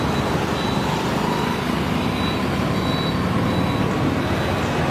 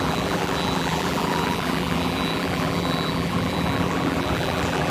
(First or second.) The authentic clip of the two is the first